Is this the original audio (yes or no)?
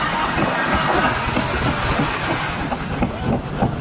yes